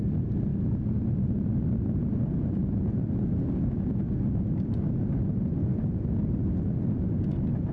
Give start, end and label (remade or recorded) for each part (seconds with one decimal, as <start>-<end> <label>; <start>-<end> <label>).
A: 0.0-7.7 recorded